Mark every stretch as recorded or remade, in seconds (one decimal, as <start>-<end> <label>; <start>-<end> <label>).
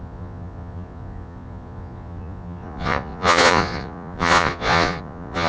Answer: 0.0-5.5 remade